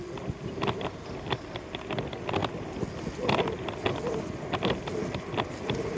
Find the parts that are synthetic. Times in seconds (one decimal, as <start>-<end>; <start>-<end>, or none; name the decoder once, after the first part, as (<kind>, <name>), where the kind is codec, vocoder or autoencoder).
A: none